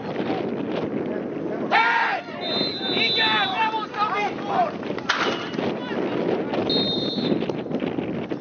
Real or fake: real